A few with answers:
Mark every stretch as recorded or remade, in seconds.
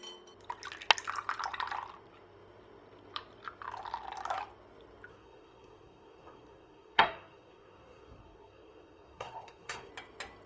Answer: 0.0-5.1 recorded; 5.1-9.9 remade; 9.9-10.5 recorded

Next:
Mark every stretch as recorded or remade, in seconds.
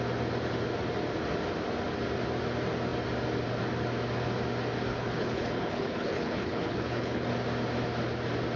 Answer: 0.0-4.9 recorded; 4.9-7.3 remade; 7.3-8.6 recorded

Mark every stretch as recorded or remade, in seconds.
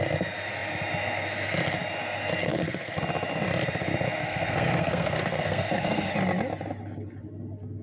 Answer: 0.0-2.4 recorded; 2.4-2.9 remade; 2.9-4.2 recorded; 4.2-6.1 remade; 6.1-7.8 recorded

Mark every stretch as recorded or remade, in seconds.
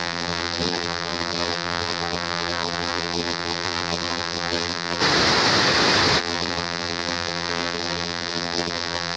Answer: 0.0-5.0 remade; 5.0-6.2 recorded; 6.2-9.2 remade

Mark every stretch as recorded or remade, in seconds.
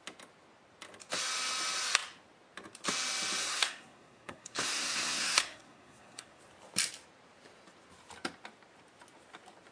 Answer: 0.0-3.4 recorded; 3.4-6.4 remade; 6.4-9.7 recorded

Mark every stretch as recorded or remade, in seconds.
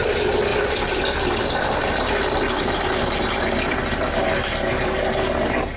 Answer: 0.0-0.5 recorded; 0.5-4.0 remade; 4.0-5.8 recorded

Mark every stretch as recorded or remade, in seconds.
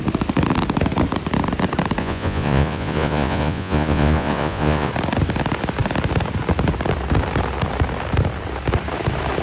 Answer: 0.0-2.0 recorded; 2.0-4.9 remade; 4.9-9.4 recorded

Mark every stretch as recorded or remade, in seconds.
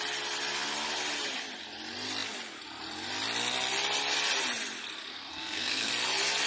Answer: 0.0-5.1 recorded; 5.1-5.9 remade; 5.9-6.5 recorded